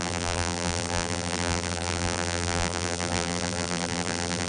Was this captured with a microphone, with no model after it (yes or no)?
no